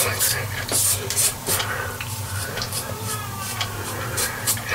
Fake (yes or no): yes